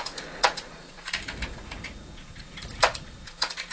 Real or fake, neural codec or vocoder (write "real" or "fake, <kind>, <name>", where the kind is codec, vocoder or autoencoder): fake, vocoder, Vocos